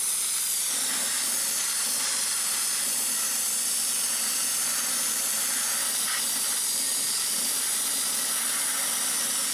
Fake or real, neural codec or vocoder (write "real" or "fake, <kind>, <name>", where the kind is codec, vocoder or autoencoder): real